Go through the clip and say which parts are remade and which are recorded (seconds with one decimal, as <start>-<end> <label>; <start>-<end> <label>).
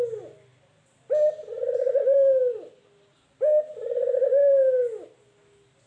0.0-0.5 recorded; 0.5-3.4 remade; 3.4-5.9 recorded